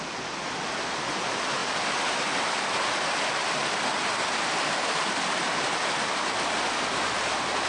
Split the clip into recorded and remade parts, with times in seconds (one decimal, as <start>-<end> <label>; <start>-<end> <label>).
0.0-7.7 recorded